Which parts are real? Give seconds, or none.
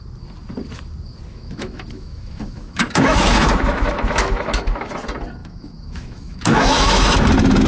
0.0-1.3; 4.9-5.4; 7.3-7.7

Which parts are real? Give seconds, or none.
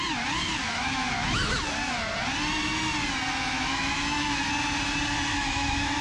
0.0-0.6; 1.7-3.3; 4.4-5.3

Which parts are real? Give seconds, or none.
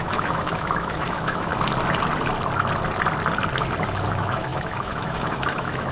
1.5-4.1